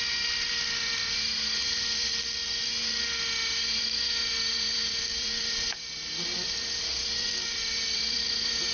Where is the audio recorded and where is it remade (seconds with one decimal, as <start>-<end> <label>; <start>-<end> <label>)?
0.0-2.4 remade; 2.4-3.8 recorded; 3.8-8.7 remade